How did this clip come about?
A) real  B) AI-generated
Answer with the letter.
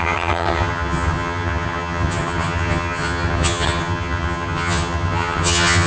B